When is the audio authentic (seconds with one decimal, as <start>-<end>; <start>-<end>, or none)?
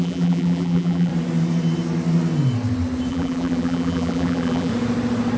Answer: 1.1-3.1; 4.7-5.4